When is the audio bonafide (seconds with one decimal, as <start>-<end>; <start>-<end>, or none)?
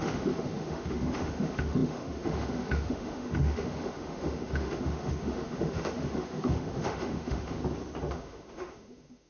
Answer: 7.6-8.1